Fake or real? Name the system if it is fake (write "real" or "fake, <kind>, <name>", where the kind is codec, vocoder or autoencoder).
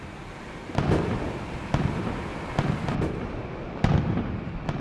real